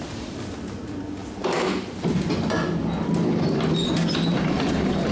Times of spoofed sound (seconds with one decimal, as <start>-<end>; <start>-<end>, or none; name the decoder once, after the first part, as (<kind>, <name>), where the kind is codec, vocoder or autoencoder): 0.0-1.2 (vocoder, BigVGAN v2); 4.3-5.1